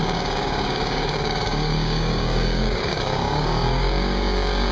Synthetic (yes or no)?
yes